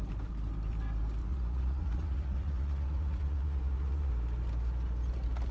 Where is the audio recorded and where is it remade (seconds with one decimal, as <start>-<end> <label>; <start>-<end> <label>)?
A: 0.0-1.2 recorded; 1.2-4.1 remade; 4.1-5.5 recorded